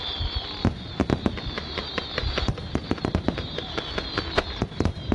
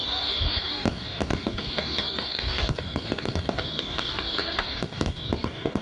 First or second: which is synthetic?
second